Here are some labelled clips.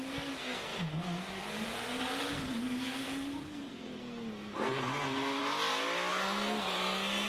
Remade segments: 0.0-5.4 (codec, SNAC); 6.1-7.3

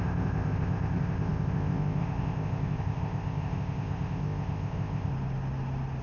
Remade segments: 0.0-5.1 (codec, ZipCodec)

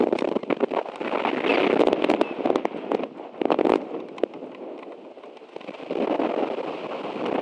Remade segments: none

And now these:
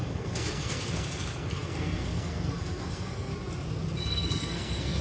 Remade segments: 0.0-3.3 (codec, SNAC); 4.1-5.0

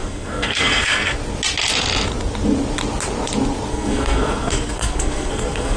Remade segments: 0.0-1.2 (codec, SNAC); 3.7-5.8

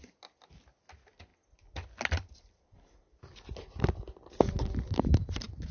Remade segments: none